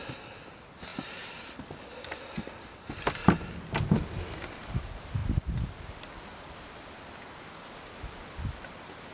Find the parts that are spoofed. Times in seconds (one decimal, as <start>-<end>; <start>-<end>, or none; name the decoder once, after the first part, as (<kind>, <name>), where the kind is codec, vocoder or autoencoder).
none